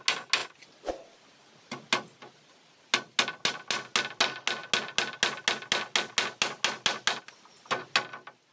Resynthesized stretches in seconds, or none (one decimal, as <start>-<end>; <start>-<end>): none